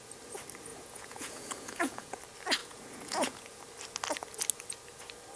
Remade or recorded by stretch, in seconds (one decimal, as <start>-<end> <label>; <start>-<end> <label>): 0.0-0.7 recorded; 0.7-2.2 remade; 2.2-2.6 recorded; 2.6-3.6 remade; 3.6-5.4 recorded